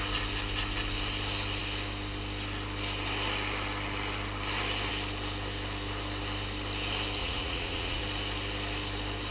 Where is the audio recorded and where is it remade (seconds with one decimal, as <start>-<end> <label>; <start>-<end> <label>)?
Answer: 0.0-7.2 recorded; 7.2-8.0 remade; 8.0-9.3 recorded